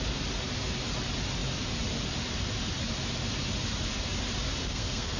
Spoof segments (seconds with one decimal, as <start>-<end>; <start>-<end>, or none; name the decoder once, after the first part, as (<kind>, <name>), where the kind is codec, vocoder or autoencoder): 4.6-5.2 (codec, SNAC)